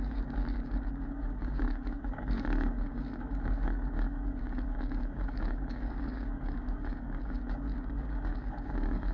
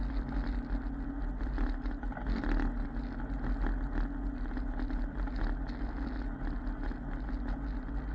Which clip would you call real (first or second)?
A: second